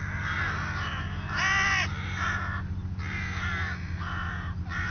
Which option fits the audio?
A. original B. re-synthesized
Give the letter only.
A